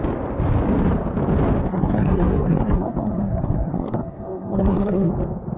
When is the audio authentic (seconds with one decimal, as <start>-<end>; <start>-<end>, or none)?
0.0-1.7; 5.1-5.6